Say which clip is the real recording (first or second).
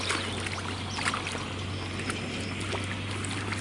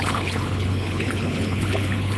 first